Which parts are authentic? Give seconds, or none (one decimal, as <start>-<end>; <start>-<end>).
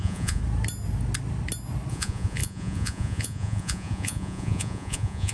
0.4-1.9